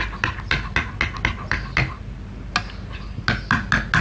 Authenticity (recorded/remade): recorded